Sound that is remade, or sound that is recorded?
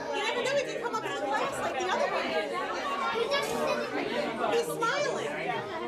recorded